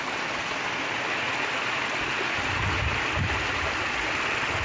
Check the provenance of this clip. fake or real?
real